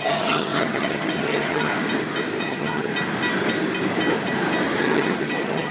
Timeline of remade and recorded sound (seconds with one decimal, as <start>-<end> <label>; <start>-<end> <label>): 0.0-1.7 remade; 1.7-2.4 recorded; 2.4-2.9 remade; 2.9-4.8 recorded; 4.8-5.7 remade